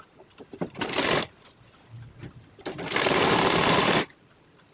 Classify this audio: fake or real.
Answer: real